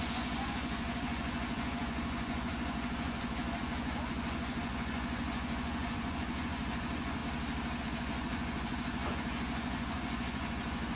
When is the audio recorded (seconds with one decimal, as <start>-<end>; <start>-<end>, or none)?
7.2-7.8